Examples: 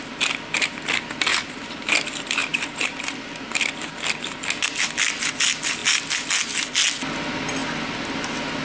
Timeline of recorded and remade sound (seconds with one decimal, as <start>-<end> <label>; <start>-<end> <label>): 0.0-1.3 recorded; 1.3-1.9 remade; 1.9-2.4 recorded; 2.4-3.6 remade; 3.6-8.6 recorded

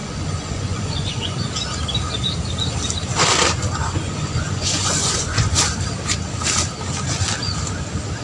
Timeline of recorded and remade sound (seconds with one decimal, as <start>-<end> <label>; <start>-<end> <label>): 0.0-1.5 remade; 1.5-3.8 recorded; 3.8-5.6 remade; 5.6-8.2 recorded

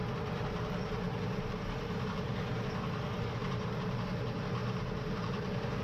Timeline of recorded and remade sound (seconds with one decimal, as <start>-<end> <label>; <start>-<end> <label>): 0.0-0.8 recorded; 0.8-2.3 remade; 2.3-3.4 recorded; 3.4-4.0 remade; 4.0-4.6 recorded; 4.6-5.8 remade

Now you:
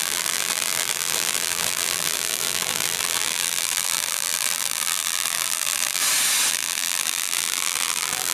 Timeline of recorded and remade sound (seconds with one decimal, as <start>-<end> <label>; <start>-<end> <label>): 0.0-6.0 remade; 6.0-6.5 recorded; 6.5-8.3 remade